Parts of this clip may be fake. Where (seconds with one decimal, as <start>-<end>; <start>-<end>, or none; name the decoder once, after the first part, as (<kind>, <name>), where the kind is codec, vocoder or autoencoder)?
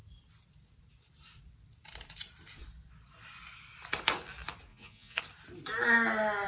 4.7-5.2 (vocoder, Vocos)